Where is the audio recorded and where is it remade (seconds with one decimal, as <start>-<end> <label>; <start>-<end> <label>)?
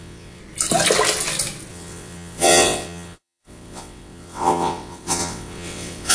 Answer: 0.0-0.4 remade; 0.4-1.7 recorded; 1.7-6.1 remade